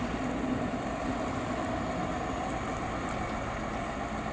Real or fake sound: real